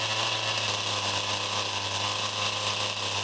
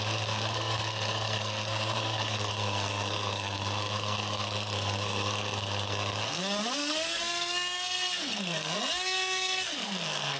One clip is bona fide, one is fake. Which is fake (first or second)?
second